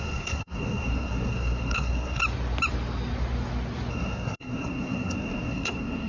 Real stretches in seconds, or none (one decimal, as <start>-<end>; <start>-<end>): 2.2-3.9